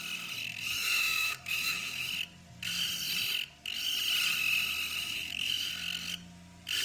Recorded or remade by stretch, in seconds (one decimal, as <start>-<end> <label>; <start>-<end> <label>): 0.0-0.5 recorded; 0.5-2.1 remade; 2.1-5.0 recorded; 5.0-5.7 remade; 5.7-6.8 recorded